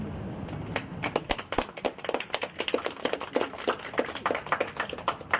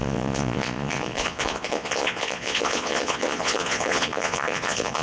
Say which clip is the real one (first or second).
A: first